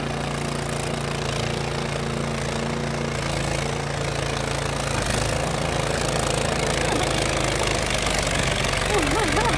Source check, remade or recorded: recorded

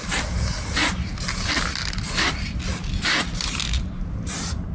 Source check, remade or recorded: recorded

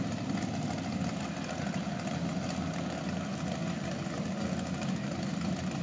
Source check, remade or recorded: recorded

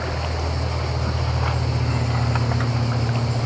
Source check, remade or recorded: recorded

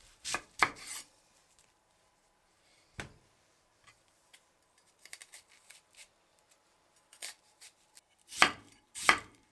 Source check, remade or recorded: remade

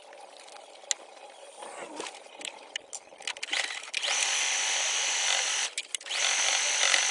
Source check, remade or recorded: recorded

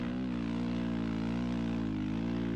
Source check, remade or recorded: recorded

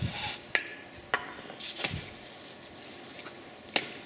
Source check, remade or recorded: recorded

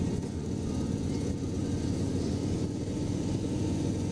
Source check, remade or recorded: remade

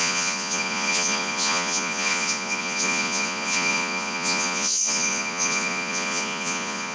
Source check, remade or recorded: remade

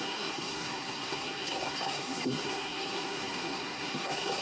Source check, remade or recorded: remade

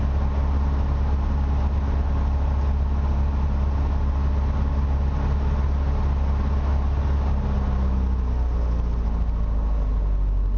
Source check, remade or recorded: recorded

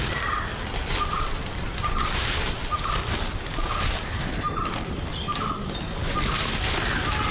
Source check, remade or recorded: recorded